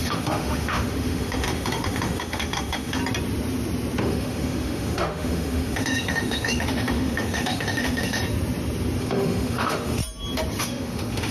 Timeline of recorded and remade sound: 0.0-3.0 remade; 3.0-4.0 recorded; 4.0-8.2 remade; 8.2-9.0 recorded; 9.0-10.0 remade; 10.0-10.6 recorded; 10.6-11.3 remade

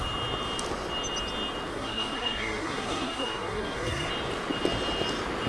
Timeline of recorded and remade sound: 0.0-1.7 recorded; 1.7-4.1 remade; 4.1-5.5 recorded

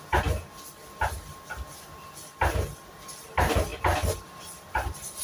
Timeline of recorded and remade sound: 0.0-5.2 recorded

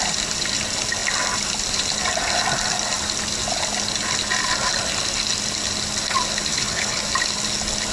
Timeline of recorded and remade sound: 0.0-6.5 recorded; 6.5-7.0 remade; 7.0-7.9 recorded

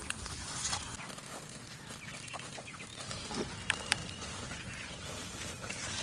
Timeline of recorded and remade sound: 0.0-0.9 remade; 0.9-2.9 recorded; 2.9-3.5 remade; 3.5-4.0 recorded; 4.0-4.9 remade; 4.9-6.0 recorded

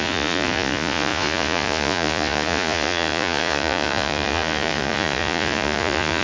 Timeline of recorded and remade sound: 0.0-6.2 remade

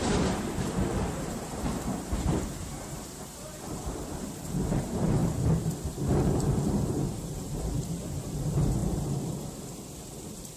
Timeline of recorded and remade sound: 0.0-5.2 remade; 5.2-6.3 recorded; 6.3-8.8 remade; 8.8-10.6 recorded